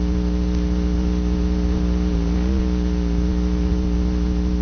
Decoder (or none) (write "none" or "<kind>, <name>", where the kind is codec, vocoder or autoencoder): none